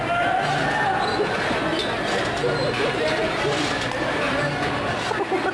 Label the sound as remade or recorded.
recorded